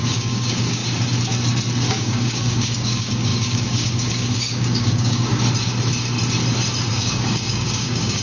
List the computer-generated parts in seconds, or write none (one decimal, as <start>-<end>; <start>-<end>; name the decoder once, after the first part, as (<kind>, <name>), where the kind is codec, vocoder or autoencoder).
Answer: 0.0-0.8 (codec, DAC); 1.9-5.3; 6.9-8.2